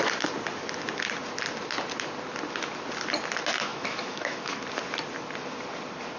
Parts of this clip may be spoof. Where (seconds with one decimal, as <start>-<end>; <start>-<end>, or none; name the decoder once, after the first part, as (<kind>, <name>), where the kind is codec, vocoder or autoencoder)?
3.7-4.6 (autoencoder, DAC-VAE)